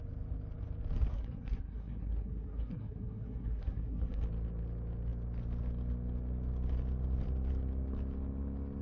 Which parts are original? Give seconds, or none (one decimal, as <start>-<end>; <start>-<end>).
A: 0.0-1.1; 4.2-8.8